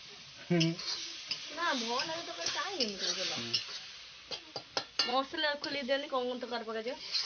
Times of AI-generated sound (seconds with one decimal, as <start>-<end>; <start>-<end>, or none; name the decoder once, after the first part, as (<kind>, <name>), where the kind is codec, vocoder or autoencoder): 1.6-3.0 (codec, DAC); 5.1-6.1